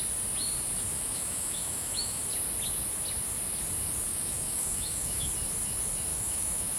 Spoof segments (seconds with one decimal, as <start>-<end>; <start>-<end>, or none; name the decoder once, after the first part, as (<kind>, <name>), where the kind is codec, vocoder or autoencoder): 0.9-2.2 (autoencoder, DAC-VAE); 4.1-5.3; 6.1-6.8

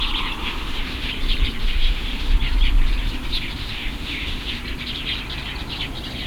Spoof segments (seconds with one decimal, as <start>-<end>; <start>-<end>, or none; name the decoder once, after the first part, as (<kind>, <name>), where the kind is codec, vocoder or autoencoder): 0.4-1.1 (autoencoder, DAC-VAE); 1.6-2.3; 3.6-4.6

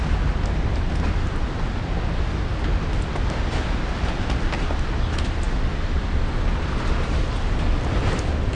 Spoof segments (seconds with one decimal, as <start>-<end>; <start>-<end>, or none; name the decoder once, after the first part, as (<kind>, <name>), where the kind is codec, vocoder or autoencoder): none